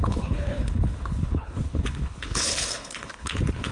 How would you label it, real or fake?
fake